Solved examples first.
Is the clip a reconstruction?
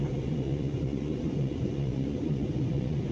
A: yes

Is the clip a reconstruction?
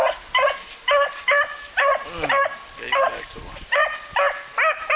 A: no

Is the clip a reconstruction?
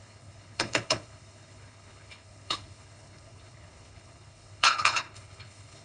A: yes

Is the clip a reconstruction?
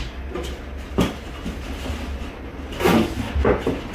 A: no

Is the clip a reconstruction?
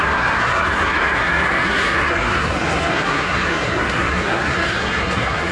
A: yes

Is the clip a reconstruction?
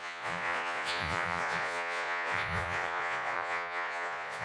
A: yes